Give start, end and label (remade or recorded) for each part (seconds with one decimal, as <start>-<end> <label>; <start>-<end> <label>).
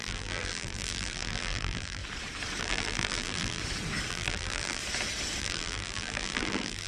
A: 0.0-2.0 remade; 2.0-2.6 recorded; 2.6-3.6 remade; 3.6-4.1 recorded; 4.1-4.8 remade; 4.8-5.4 recorded; 5.4-6.9 remade